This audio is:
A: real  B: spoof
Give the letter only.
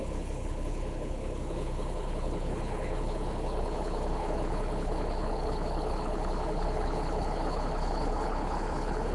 B